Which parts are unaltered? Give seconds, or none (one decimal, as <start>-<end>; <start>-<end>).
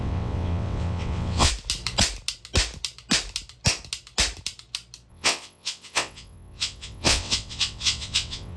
1.5-5.1